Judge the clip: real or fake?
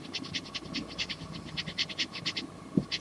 real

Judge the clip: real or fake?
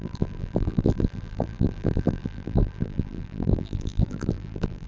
fake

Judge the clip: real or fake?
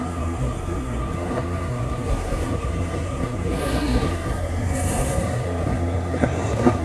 fake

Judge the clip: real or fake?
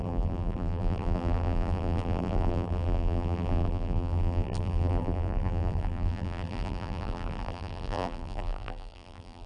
fake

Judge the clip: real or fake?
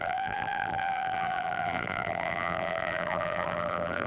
fake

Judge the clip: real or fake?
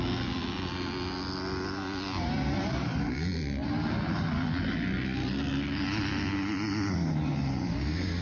real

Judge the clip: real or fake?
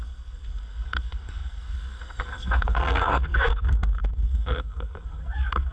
fake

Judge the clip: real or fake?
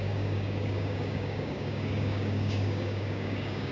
fake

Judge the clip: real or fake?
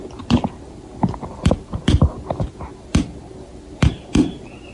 real